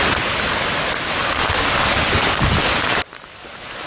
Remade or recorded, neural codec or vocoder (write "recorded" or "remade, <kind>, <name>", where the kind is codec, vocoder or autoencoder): recorded